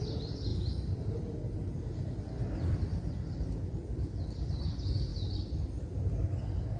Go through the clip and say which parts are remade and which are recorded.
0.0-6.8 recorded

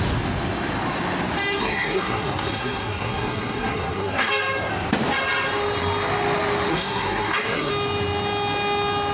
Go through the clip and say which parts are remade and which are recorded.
0.0-1.6 recorded; 1.6-4.3 remade; 4.3-6.7 recorded; 6.7-7.7 remade; 7.7-9.1 recorded

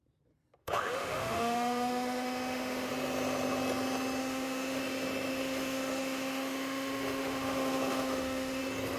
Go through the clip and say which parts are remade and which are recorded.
0.0-0.6 recorded; 0.6-2.9 remade; 2.9-4.2 recorded; 4.2-4.8 remade; 4.8-5.3 recorded; 5.3-8.6 remade; 8.6-9.0 recorded